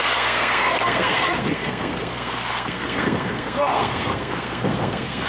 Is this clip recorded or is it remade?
remade